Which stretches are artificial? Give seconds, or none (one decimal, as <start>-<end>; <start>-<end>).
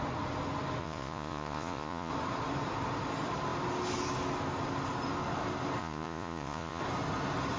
0.8-2.1; 5.8-6.8